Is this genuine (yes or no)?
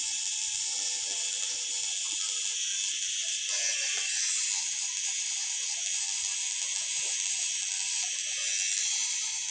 yes